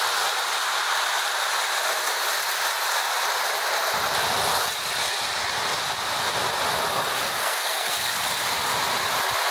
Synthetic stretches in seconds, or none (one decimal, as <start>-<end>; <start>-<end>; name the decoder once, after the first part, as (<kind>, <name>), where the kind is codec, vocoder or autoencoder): 7.4-8.1 (codec, SNAC)